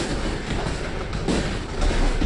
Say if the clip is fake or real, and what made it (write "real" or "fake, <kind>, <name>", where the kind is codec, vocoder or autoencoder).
real